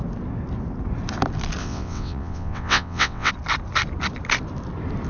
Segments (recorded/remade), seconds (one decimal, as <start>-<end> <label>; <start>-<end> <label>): 0.0-1.6 recorded; 1.6-3.3 remade; 3.3-5.1 recorded